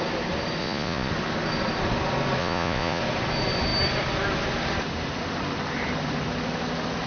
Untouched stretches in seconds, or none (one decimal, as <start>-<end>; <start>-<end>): 0.0-0.6; 1.1-2.4; 3.0-7.1